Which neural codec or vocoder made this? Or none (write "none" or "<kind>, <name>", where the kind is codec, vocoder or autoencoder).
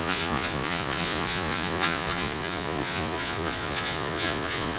vocoder, Vocos